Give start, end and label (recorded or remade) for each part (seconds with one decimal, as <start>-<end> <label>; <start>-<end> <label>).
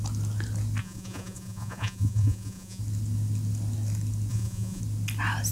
0.0-0.8 recorded; 0.8-2.8 remade; 2.8-4.3 recorded; 4.3-4.8 remade; 4.8-5.5 recorded